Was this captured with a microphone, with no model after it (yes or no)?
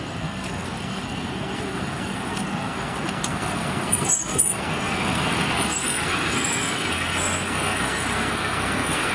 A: no